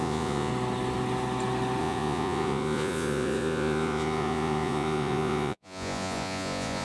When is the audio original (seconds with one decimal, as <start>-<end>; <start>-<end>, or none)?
0.5-1.8